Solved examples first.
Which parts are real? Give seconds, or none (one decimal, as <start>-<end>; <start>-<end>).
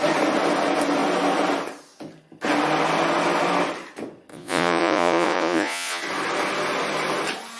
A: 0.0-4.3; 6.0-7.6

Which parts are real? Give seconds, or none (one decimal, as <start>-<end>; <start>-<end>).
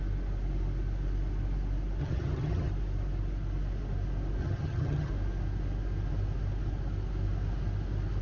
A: 0.0-2.0; 2.7-4.4; 5.1-8.2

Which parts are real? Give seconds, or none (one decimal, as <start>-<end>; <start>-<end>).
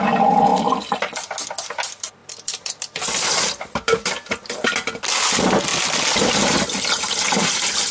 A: 0.0-0.5; 1.0-2.2; 4.4-5.7; 6.3-7.9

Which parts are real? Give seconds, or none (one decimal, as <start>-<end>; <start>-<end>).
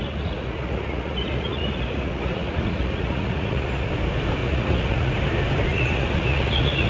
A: 3.9-4.4; 5.1-5.7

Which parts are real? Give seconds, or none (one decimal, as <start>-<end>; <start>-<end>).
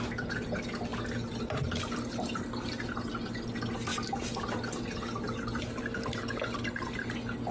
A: 0.0-7.5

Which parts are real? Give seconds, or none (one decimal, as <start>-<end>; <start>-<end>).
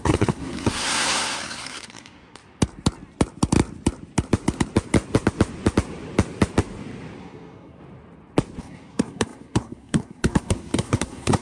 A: 2.4-7.2; 7.8-8.6